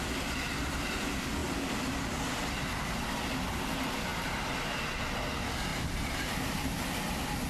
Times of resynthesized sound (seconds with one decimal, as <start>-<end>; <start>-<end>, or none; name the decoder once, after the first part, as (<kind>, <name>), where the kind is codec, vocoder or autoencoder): 5.7-6.8 (vocoder, BigVGAN v2)